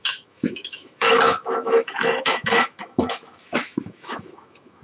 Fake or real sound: fake